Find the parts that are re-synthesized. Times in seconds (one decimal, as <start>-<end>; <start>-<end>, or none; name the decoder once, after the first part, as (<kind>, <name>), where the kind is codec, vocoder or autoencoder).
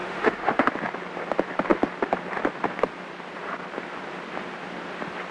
0.0-0.7 (autoencoder, DAC-VAE)